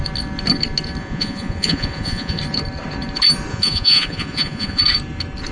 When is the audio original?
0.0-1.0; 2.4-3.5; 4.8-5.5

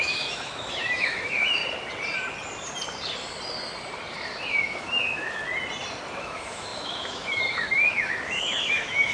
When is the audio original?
1.6-4.5; 5.4-6.1

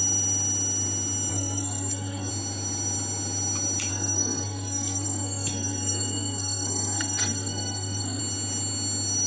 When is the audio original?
0.0-1.3; 2.3-3.9; 8.2-9.3

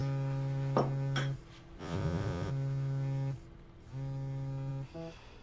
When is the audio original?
0.0-1.8; 2.5-5.4